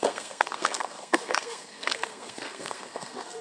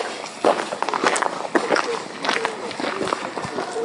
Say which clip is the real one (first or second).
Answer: second